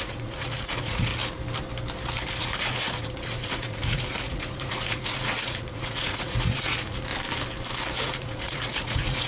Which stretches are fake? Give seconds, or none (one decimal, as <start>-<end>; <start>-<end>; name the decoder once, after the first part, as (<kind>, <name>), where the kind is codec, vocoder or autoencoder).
0.0-1.1 (vocoder, Vocos); 2.4-7.1; 8.0-9.3